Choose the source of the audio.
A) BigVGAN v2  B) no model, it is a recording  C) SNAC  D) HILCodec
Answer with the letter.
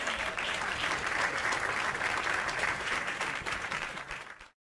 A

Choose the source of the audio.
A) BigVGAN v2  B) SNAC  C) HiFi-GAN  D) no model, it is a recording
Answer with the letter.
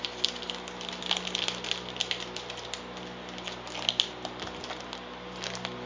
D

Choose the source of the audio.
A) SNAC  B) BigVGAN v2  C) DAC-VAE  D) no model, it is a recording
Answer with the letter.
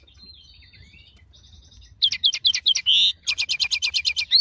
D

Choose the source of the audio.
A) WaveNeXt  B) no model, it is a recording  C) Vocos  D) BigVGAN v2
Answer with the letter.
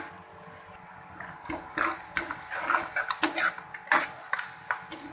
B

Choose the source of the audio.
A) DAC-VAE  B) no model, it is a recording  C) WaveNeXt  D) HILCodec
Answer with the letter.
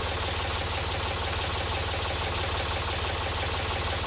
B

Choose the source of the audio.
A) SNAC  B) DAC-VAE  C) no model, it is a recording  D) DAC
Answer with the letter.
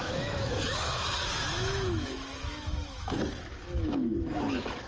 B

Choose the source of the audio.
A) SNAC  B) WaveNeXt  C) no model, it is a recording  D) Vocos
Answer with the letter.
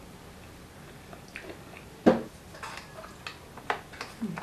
C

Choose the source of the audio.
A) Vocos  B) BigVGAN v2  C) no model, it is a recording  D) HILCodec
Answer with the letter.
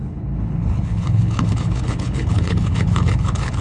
D